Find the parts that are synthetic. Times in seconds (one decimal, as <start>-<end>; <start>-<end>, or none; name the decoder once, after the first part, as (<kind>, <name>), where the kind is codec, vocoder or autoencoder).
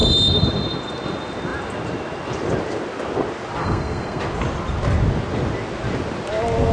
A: 3.6-4.2 (codec, SNAC)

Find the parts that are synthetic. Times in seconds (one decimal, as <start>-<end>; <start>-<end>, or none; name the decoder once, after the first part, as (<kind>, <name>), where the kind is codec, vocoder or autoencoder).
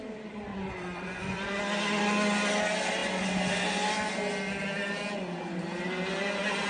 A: 0.5-1.6 (vocoder, Vocos)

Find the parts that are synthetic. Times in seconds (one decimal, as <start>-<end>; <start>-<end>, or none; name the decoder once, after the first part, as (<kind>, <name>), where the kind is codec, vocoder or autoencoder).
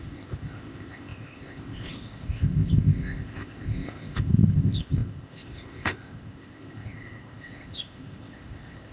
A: 0.0-8.9 (codec, ZipCodec)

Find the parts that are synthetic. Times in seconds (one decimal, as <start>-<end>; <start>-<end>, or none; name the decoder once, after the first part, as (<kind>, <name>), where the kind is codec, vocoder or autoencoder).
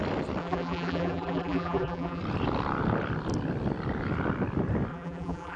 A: 0.4-2.2 (vocoder, BigVGAN v2); 4.9-5.6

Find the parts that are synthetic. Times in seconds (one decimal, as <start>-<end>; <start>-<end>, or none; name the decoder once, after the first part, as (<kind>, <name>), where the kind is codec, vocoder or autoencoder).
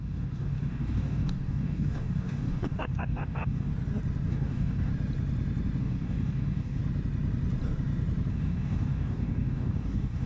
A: 0.0-3.7 (codec, DAC); 4.3-4.9; 5.8-6.8; 8.3-10.3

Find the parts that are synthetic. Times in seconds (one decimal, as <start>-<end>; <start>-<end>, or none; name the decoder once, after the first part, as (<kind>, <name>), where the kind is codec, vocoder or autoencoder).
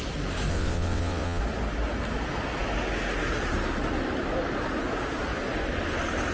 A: 0.5-1.4 (vocoder, WaveNeXt)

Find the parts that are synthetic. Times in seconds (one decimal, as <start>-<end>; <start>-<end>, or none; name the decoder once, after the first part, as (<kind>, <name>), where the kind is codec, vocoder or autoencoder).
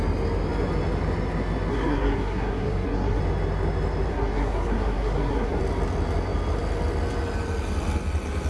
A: 1.7-3.2 (codec, SNAC); 4.1-5.6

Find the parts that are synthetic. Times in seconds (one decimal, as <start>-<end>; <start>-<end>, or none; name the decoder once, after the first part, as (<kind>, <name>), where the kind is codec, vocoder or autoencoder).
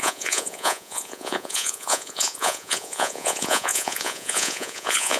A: 0.0-5.2 (vocoder, Vocos)